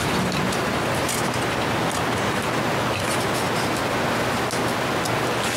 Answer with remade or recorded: recorded